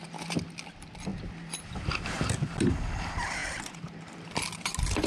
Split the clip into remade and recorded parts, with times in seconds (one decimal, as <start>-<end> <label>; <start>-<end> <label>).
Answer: 0.0-5.1 remade

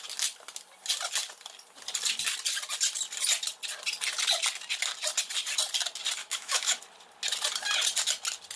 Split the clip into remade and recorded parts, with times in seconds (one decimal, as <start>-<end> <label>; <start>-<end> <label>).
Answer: 0.0-6.2 recorded; 6.2-6.8 remade; 6.8-8.6 recorded